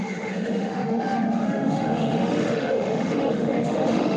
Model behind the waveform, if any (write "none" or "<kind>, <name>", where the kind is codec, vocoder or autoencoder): autoencoder, DAC-VAE